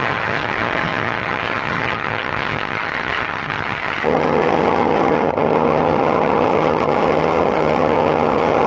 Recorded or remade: remade